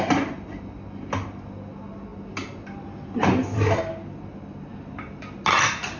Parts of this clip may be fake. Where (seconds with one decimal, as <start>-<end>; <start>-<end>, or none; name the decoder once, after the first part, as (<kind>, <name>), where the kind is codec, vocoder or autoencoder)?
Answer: none